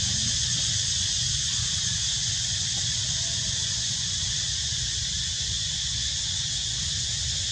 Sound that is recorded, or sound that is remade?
remade